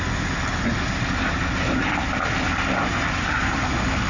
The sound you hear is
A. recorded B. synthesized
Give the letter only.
A